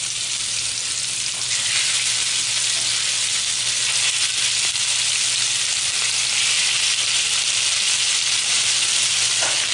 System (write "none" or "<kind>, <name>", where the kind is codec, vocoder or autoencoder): none